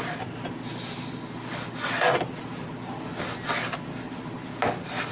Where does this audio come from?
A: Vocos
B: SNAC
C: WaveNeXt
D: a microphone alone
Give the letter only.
D